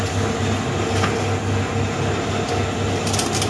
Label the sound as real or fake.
real